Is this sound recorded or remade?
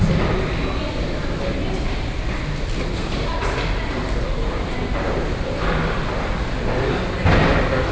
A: recorded